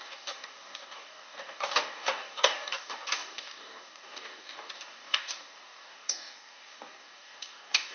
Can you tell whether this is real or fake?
fake